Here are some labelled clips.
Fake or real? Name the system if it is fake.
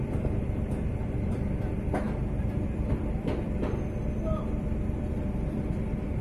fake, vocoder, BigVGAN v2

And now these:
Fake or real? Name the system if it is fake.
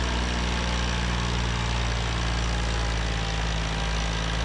real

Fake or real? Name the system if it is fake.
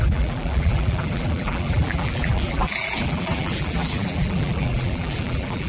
fake, vocoder, BigVGAN v2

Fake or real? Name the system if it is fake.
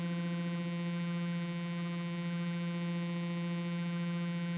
fake, vocoder, BigVGAN v2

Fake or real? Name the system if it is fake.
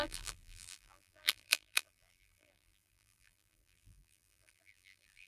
fake, vocoder, BigVGAN v2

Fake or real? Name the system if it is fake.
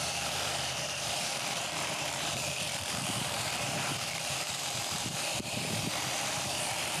fake, vocoder, BigVGAN v2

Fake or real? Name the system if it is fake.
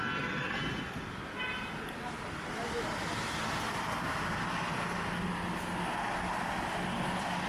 real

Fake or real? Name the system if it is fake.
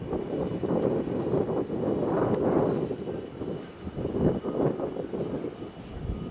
real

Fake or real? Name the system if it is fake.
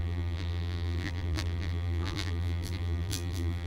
fake, vocoder, BigVGAN v2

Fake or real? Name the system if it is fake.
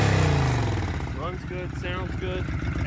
real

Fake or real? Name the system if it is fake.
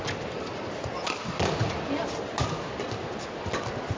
real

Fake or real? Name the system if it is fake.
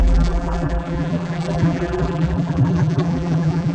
fake, vocoder, BigVGAN v2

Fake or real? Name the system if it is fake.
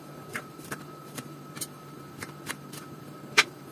fake, vocoder, BigVGAN v2